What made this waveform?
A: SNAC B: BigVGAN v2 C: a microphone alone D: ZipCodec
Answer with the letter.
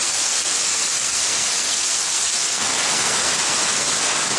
A